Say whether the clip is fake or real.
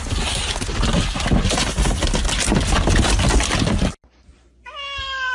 real